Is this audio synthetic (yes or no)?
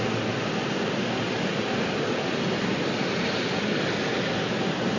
no